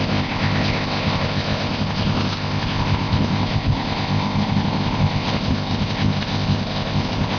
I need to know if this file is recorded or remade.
remade